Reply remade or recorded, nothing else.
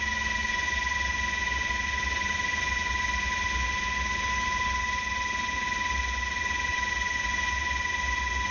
recorded